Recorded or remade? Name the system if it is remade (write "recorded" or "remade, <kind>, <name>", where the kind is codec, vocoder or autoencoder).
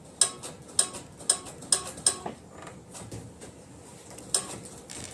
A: recorded